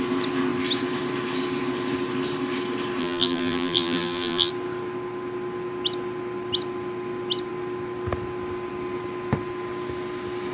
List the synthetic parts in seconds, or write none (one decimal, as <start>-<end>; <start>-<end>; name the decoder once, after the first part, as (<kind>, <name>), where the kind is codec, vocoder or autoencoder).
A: 3.0-4.5 (vocoder, BigVGAN v2)